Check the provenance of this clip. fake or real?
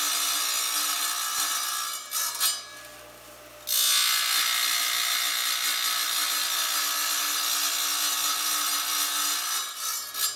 real